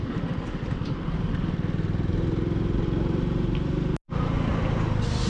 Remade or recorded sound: recorded